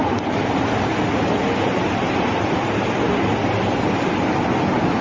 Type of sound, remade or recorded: recorded